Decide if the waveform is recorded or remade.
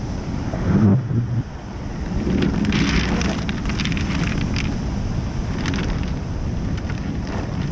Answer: recorded